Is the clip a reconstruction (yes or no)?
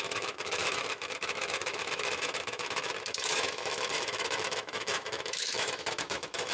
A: yes